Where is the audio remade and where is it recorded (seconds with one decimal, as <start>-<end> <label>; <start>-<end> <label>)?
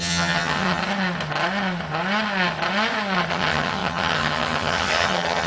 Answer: 0.0-0.8 remade; 0.8-3.3 recorded; 3.3-5.5 remade